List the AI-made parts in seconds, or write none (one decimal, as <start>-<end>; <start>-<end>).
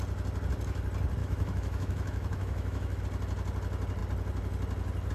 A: 1.2-3.0